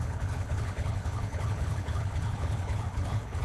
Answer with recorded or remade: remade